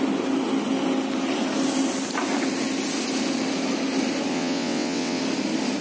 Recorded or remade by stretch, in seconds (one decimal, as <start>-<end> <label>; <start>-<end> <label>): 0.0-4.3 recorded; 4.3-5.2 remade; 5.2-5.8 recorded